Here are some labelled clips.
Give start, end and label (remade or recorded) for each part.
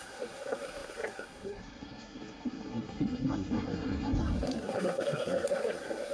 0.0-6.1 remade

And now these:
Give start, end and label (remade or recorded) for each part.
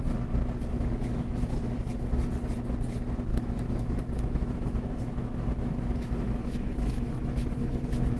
0.0-0.7 recorded; 0.7-1.8 remade; 1.8-3.3 recorded; 3.3-8.2 remade